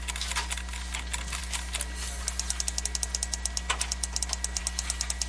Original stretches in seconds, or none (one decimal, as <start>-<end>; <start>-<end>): 0.0-5.3